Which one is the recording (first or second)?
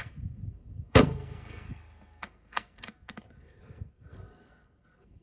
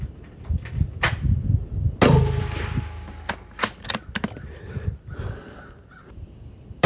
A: second